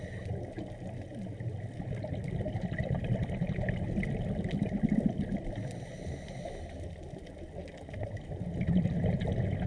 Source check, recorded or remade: recorded